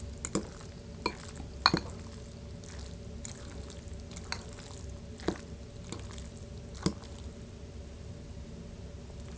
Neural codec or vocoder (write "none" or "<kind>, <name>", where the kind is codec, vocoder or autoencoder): none